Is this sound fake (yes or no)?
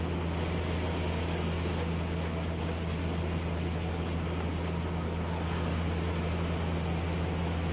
no